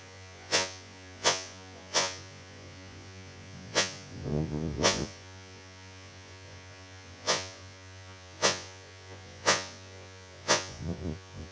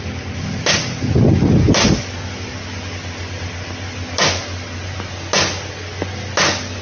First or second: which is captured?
second